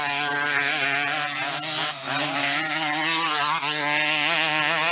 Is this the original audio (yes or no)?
yes